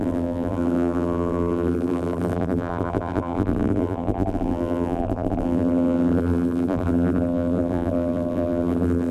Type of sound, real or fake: fake